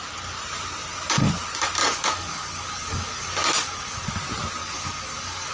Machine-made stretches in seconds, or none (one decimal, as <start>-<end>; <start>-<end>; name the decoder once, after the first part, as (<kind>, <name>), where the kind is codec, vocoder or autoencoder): 1.8-4.1 (codec, DAC); 4.6-5.5